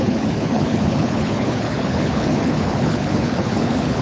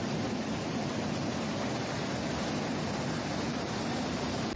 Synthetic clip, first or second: first